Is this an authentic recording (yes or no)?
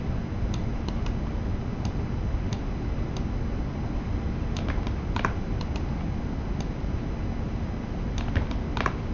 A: yes